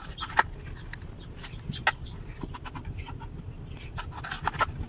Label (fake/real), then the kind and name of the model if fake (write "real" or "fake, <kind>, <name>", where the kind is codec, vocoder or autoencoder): real